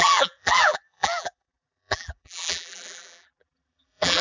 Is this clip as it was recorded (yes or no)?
no